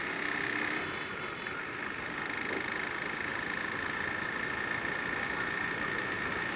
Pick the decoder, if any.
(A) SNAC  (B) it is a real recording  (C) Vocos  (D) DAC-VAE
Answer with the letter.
B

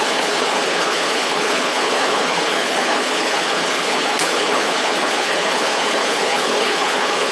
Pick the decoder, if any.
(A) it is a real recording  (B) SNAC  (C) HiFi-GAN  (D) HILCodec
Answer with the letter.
D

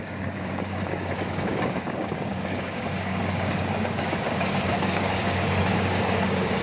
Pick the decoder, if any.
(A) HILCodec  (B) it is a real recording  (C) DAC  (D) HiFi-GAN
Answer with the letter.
C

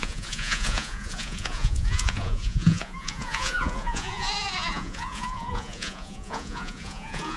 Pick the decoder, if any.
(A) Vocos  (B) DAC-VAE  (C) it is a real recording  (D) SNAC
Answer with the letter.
A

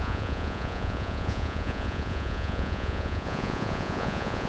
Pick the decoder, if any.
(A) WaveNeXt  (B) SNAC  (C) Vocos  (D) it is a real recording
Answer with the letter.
C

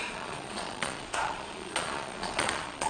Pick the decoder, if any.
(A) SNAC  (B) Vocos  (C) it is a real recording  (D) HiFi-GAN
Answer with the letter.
B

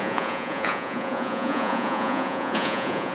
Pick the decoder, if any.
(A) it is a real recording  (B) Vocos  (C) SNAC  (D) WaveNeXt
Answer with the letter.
B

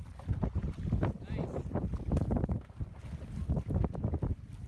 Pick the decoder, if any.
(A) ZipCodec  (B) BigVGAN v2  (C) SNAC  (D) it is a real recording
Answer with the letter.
D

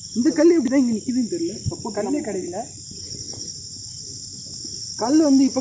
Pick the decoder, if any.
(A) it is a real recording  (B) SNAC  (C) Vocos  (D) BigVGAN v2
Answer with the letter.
A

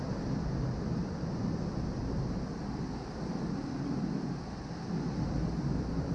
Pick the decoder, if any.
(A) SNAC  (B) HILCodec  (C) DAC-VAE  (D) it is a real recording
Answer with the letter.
D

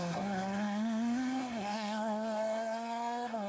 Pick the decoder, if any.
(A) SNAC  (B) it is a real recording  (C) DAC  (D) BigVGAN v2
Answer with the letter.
A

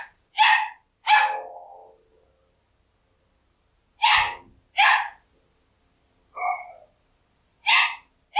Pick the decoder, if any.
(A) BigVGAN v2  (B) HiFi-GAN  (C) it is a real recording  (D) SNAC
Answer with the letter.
C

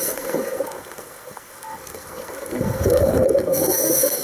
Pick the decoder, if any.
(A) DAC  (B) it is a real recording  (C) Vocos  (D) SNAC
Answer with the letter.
D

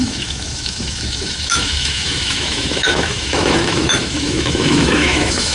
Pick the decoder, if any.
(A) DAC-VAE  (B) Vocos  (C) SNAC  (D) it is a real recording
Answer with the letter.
A